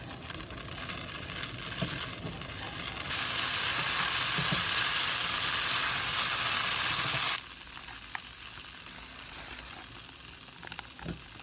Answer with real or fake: real